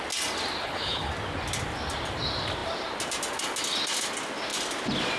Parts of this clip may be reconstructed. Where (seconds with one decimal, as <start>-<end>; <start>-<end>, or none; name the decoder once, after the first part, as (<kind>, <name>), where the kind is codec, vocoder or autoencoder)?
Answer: 0.6-1.1 (codec, HILCodec)